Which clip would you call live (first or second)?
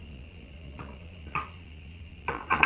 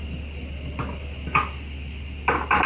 second